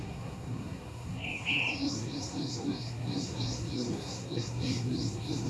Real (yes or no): no